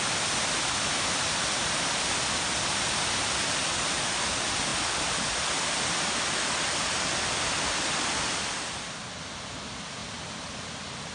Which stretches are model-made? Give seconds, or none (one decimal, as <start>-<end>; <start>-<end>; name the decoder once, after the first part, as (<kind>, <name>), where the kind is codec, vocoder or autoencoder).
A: none